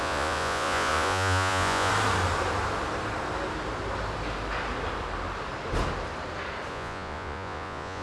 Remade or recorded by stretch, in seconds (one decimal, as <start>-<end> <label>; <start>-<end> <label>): 0.0-1.9 remade; 1.9-6.7 recorded; 6.7-8.0 remade